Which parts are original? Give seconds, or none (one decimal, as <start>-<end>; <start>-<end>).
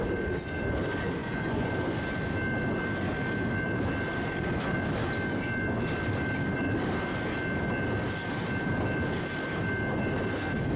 0.0-1.2; 1.7-10.8